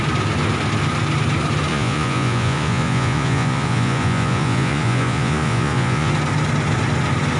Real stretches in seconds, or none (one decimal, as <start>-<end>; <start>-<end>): 0.0-1.7; 6.1-7.4